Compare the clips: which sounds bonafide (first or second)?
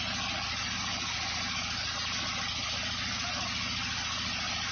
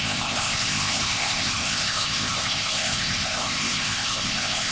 first